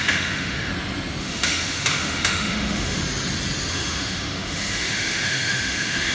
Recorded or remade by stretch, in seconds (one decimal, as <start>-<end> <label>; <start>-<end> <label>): 0.0-0.7 remade; 0.7-1.2 recorded; 1.2-3.0 remade; 3.0-3.7 recorded; 3.7-6.1 remade